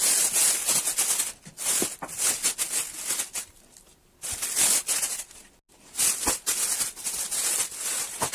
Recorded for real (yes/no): yes